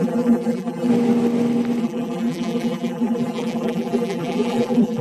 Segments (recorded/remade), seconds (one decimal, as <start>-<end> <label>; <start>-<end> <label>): 0.0-0.9 remade; 0.9-1.8 recorded; 1.8-5.0 remade